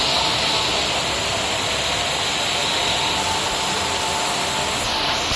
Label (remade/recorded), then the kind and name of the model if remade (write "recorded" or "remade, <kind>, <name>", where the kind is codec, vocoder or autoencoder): recorded